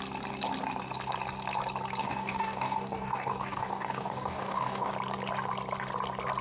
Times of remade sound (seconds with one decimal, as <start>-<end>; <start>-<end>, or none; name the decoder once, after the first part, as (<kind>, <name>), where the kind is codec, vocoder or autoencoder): 2.0-4.9 (codec, DAC)